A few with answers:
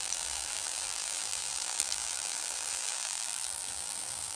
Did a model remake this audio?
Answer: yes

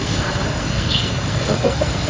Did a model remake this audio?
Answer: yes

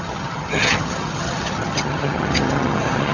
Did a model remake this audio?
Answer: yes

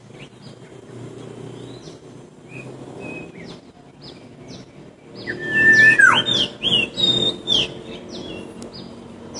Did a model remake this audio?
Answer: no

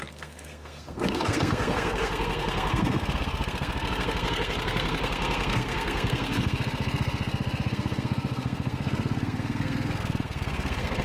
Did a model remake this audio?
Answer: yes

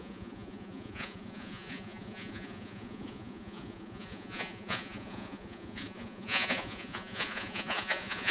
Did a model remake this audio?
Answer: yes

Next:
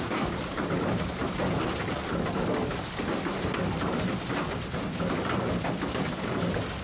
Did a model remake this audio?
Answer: no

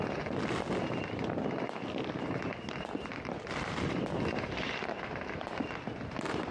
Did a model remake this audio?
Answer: yes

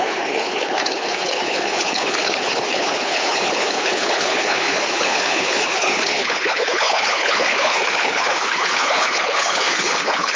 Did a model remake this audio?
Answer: yes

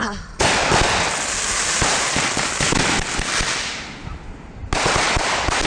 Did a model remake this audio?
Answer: no